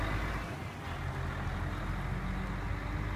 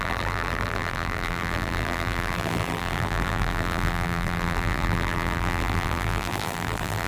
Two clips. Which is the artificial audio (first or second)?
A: second